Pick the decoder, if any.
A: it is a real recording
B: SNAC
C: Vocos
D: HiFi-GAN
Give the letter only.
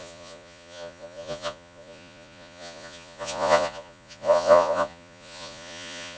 C